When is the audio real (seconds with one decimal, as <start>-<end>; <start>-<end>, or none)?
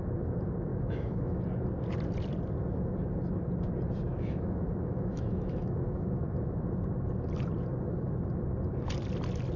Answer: 0.0-0.7; 1.4-4.1; 6.2-9.6